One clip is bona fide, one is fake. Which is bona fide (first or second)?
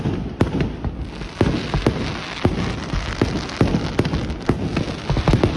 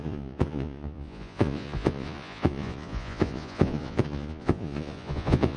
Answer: first